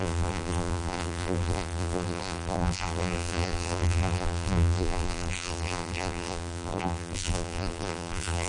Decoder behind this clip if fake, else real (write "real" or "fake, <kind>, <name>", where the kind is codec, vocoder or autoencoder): fake, vocoder, BigVGAN v2